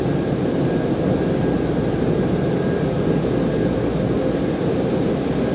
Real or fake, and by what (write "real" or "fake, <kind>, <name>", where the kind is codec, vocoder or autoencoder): real